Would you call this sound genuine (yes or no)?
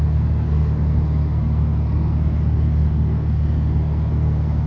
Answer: no